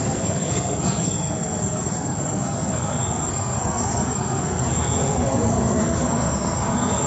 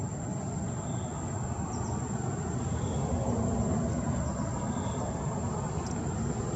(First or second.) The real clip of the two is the second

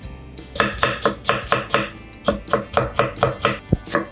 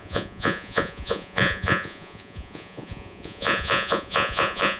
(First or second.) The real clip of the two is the first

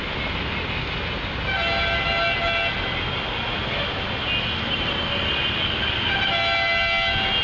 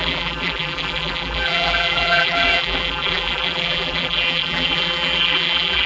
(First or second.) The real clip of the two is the first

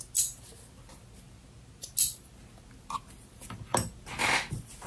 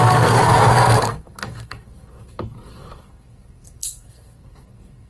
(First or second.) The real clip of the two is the first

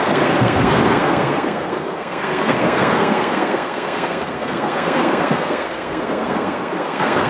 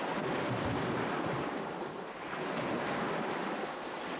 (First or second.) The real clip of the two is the second